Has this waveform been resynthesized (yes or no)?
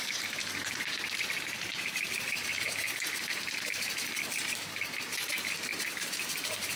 yes